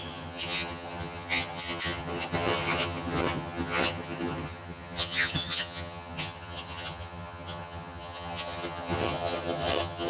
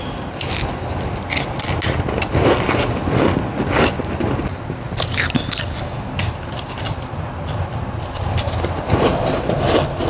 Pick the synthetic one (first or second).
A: first